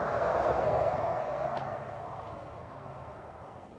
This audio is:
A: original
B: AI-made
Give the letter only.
B